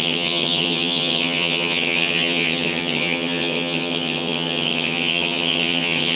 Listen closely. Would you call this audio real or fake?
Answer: fake